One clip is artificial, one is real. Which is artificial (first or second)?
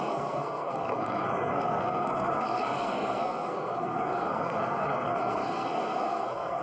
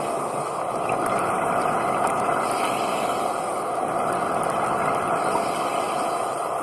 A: first